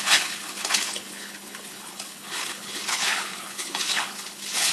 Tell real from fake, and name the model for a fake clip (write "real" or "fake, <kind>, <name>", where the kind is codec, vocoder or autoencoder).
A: fake, codec, HILCodec